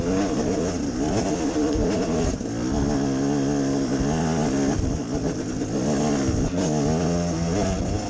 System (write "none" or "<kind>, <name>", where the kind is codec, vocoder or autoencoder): none